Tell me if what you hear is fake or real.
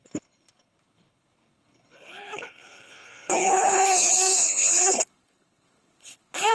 fake